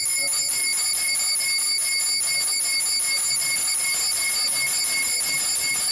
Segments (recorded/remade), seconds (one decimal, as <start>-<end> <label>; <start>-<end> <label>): 0.0-5.9 recorded